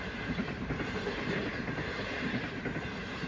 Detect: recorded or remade remade